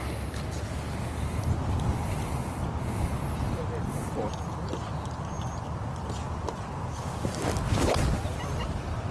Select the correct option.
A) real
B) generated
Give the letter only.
A